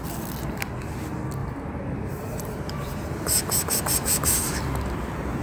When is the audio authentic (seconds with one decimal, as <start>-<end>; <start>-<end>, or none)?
0.0-1.4; 4.6-5.4

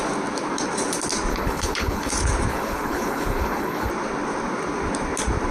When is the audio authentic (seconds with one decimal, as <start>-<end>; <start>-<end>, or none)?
0.0-1.3; 2.1-2.5; 3.9-5.5

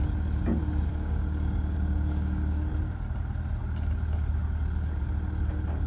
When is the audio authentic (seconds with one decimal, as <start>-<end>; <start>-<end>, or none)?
0.0-0.9; 2.7-5.9

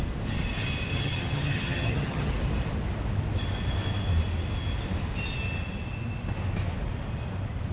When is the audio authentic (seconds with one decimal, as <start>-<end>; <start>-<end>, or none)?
0.0-0.9; 2.3-7.7

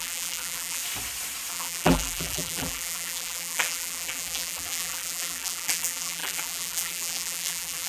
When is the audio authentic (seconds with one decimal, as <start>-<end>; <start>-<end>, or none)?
0.8-1.5

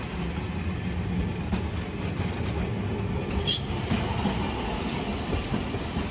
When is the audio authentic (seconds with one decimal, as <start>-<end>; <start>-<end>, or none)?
0.0-6.1